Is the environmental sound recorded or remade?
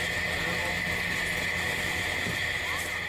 recorded